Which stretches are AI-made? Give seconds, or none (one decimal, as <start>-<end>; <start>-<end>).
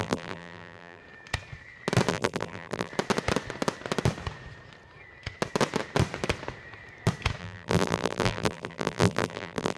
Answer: 0.0-1.0; 2.1-2.9; 7.4-9.8